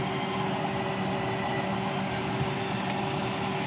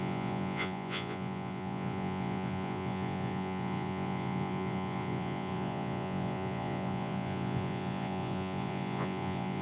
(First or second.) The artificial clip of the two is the second